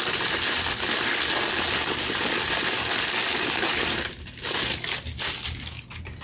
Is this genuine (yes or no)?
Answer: yes